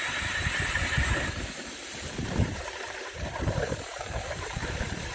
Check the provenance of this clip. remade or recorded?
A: remade